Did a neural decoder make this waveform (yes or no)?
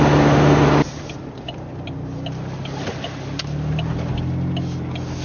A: no